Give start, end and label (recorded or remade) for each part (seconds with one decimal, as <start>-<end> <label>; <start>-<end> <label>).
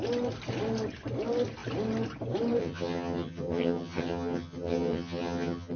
0.0-2.6 recorded; 2.6-5.8 remade